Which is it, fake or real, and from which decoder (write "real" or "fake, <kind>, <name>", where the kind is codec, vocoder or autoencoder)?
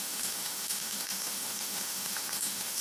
fake, autoencoder, DAC-VAE